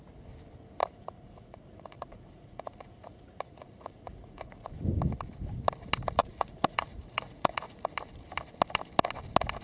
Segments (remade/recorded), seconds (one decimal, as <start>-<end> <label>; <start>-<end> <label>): 0.0-0.8 recorded; 0.8-4.7 remade; 4.7-6.2 recorded; 6.2-7.9 remade; 7.9-9.6 recorded